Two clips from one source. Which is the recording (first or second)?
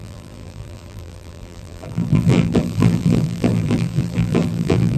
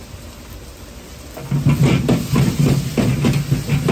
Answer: second